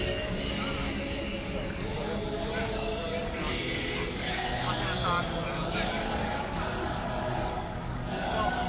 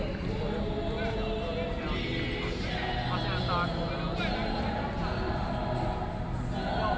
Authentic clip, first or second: second